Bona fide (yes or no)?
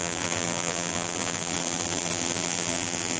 no